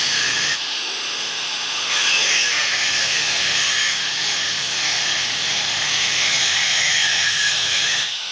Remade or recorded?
remade